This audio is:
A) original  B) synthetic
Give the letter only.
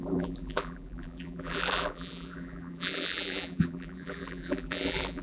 B